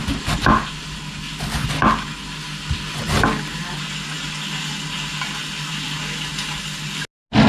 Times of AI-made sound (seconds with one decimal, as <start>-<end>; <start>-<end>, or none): none